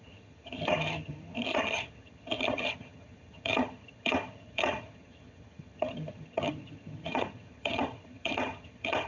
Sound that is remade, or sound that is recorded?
remade